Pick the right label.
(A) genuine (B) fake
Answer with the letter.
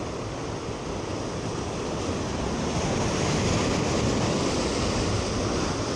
A